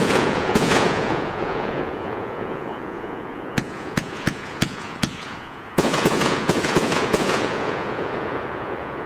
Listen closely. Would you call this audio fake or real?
fake